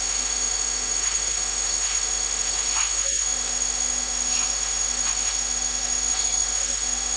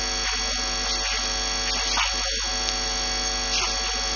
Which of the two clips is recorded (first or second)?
second